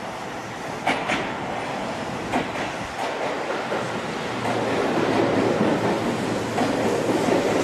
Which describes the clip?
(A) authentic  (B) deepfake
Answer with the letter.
A